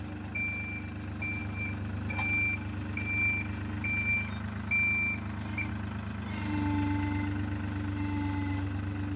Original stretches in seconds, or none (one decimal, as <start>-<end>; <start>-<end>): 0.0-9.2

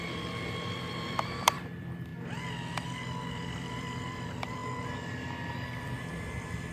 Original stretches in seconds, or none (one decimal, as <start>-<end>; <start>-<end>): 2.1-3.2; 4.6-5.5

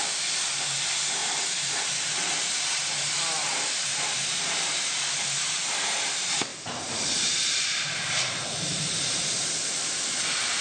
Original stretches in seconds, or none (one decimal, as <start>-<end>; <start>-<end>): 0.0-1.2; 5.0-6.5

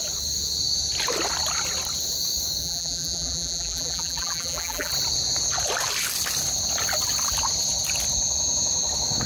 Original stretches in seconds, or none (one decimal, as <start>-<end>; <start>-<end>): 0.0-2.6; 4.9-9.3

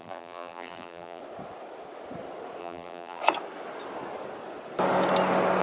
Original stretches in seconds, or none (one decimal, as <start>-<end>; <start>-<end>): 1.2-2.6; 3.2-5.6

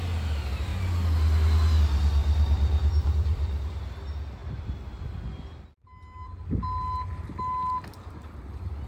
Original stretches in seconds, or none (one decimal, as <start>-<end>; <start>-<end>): 0.0-2.2; 3.8-8.9